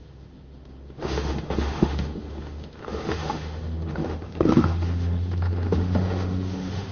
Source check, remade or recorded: remade